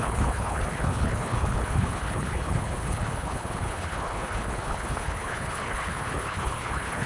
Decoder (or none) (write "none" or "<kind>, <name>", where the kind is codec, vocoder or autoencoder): codec, HILCodec